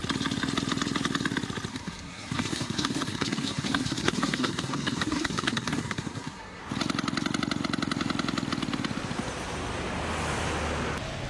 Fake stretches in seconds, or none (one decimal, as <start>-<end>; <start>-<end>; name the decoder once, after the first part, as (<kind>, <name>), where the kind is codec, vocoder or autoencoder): 1.7-6.6 (codec, SNAC)